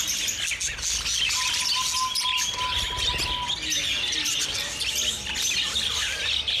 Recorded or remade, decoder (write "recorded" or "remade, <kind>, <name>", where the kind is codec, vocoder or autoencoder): recorded